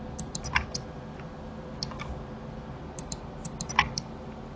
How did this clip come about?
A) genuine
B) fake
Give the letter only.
A